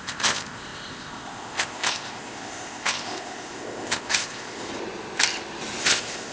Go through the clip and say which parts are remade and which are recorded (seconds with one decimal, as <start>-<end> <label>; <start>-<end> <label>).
0.0-4.7 remade; 4.7-5.8 recorded; 5.8-6.3 remade